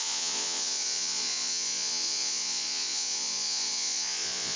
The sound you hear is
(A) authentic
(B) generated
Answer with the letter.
B